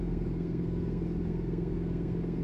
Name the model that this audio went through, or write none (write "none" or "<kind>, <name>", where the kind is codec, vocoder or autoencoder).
codec, SNAC